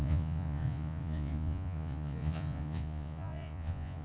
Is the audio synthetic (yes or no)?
yes